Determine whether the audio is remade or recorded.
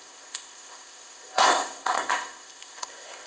remade